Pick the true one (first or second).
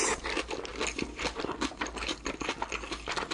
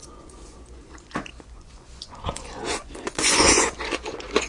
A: first